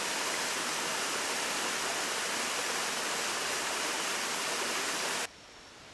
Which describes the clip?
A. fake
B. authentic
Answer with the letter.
B